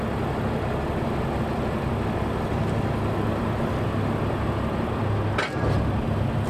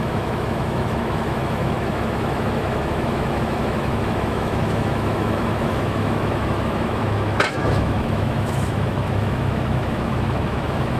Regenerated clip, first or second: second